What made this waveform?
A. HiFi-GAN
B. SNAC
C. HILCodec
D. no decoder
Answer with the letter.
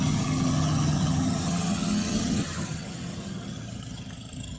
A